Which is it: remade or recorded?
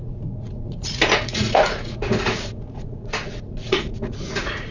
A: remade